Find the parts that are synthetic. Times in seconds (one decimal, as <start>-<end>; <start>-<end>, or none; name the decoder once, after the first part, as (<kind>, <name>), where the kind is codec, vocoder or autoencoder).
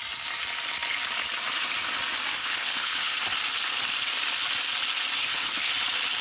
2.4-3.2 (codec, HILCodec); 5.2-5.7